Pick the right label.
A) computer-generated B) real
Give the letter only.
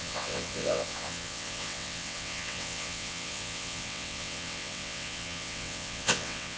A